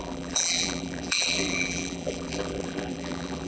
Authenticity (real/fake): fake